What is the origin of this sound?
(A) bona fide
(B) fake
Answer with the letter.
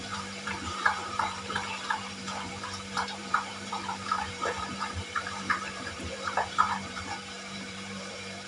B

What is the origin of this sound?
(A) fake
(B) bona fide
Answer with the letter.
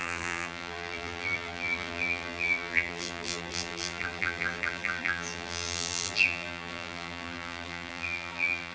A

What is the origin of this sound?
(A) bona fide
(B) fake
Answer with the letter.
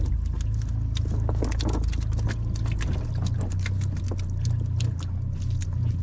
A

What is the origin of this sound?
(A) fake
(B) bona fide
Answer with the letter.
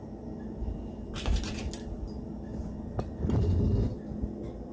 B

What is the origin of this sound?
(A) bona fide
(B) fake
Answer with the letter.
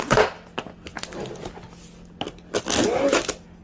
A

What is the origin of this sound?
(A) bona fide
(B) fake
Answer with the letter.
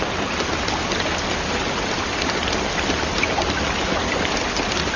A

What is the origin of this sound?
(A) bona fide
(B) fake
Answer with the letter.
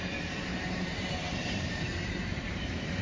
B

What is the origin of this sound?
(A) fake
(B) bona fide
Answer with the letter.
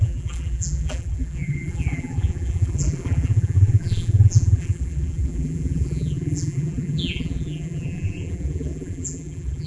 A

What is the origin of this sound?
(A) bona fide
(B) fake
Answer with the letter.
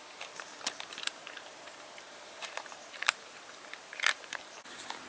B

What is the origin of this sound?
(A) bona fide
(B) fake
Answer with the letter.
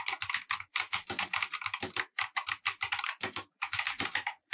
B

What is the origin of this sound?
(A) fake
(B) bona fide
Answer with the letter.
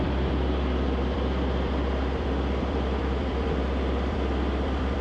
A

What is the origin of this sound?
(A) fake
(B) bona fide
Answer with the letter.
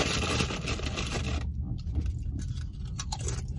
A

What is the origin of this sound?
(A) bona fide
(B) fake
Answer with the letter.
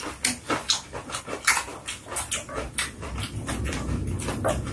A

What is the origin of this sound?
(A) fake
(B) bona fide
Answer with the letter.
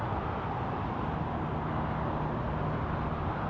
B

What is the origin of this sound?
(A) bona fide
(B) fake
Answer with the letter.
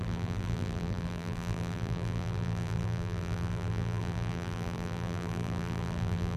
B